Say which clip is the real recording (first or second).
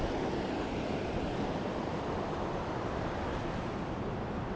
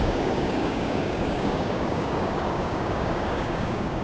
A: first